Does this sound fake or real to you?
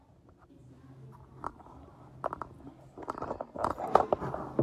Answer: real